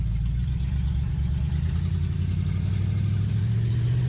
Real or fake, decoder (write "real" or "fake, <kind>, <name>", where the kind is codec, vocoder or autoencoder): fake, vocoder, BigVGAN v2